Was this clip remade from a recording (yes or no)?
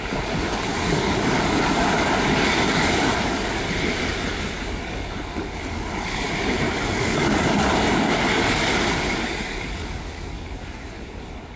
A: yes